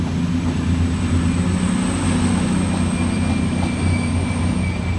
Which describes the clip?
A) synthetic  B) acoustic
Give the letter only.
B